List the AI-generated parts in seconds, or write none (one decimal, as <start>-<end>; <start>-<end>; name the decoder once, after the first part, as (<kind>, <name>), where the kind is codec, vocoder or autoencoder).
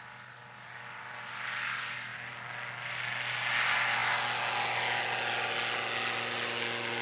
none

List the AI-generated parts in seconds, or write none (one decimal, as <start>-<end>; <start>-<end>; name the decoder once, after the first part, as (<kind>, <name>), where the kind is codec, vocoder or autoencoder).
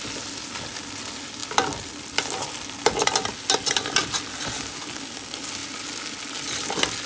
none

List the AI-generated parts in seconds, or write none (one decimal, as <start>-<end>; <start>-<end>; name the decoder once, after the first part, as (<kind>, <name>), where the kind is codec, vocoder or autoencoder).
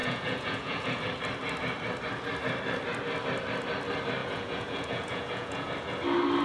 0.0-1.0 (vocoder, Vocos); 4.2-5.7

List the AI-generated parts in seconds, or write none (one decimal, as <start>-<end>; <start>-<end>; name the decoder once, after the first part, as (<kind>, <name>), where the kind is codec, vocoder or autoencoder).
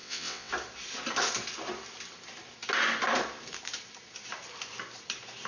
0.0-0.5 (vocoder, WaveNeXt)